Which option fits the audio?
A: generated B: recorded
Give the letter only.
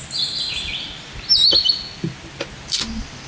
B